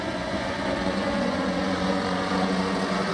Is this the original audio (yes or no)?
no